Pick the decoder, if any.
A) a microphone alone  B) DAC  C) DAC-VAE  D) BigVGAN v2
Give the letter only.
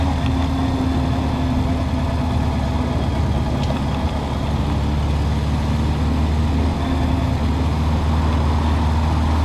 A